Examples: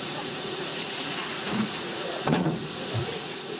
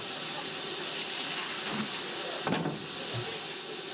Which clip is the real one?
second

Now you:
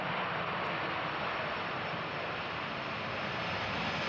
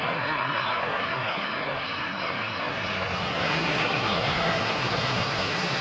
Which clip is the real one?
first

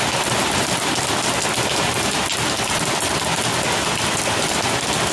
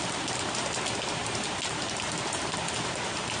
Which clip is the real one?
first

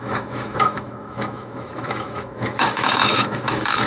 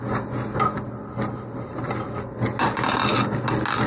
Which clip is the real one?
second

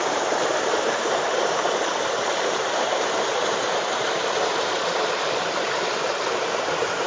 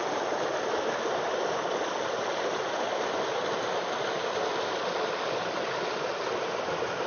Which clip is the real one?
second